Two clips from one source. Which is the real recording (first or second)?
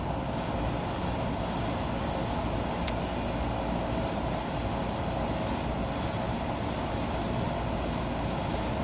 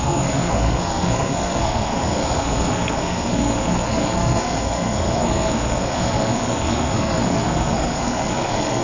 first